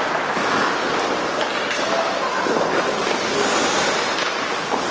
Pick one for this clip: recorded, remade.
recorded